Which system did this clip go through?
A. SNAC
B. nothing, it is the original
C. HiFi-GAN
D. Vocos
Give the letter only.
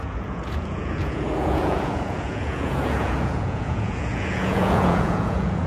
D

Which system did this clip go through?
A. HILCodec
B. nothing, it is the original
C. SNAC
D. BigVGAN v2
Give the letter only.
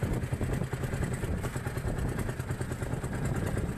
B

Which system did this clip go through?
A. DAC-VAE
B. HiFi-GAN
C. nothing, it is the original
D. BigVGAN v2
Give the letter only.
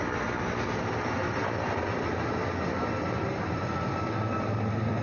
C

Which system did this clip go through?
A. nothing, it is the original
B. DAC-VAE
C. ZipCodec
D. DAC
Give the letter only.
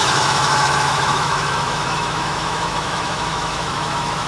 B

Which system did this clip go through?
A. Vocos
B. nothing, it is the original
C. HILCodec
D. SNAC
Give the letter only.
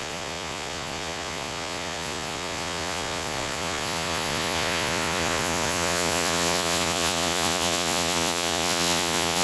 A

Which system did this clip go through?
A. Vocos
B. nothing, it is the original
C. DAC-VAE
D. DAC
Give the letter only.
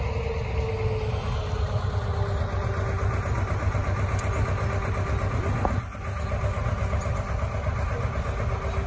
B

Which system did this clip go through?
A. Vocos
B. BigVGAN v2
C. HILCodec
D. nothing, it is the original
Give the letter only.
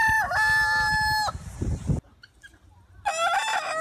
D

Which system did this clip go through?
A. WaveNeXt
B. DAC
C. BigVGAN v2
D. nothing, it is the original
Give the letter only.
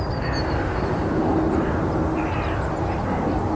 D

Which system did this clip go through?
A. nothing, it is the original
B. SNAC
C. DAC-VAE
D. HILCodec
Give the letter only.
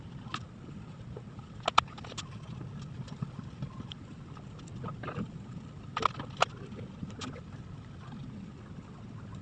A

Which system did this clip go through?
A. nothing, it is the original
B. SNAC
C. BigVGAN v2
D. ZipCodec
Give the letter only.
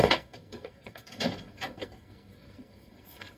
B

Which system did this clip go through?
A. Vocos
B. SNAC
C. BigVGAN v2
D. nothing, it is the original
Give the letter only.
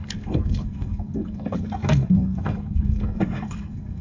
B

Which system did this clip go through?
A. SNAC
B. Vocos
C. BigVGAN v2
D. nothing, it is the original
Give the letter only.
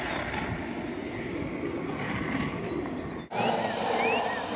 D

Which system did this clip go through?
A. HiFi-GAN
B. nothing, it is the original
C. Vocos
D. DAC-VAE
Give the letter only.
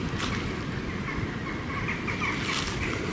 B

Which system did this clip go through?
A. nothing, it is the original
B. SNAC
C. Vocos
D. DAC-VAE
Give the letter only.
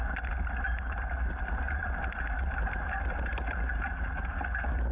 A